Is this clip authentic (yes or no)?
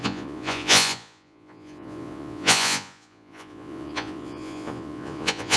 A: no